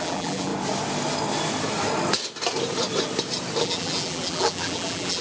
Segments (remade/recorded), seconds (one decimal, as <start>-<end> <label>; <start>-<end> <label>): 0.0-0.5 remade; 0.5-3.6 recorded; 3.6-5.2 remade